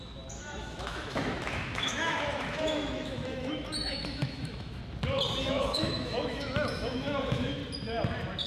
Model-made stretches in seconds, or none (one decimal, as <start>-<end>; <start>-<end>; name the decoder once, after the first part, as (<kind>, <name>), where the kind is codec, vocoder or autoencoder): 0.0-4.8 (autoencoder, DAC-VAE); 5.4-7.6